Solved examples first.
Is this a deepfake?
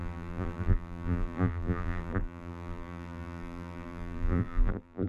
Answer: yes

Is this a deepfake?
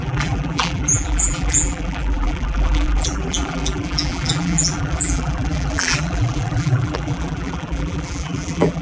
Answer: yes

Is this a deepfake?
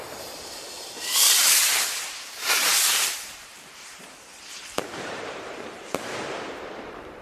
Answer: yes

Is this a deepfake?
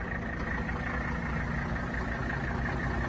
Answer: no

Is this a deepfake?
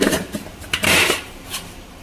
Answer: yes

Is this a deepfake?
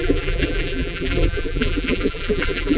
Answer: yes